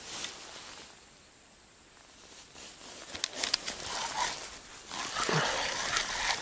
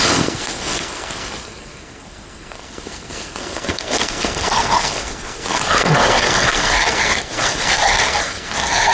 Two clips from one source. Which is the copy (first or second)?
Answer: second